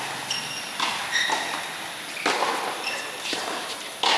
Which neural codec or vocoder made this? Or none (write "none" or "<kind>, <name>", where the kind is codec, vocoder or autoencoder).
none